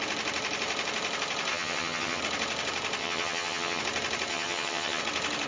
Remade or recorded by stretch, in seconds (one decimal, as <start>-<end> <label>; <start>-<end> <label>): 0.0-1.5 recorded; 1.5-2.2 remade; 2.2-3.0 recorded; 3.0-3.8 remade; 3.8-4.3 recorded; 4.3-5.0 remade; 5.0-5.5 recorded